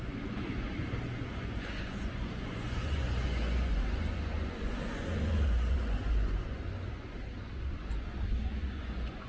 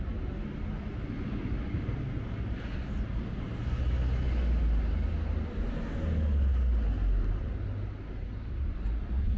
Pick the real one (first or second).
second